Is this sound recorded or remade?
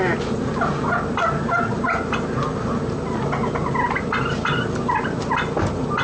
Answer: recorded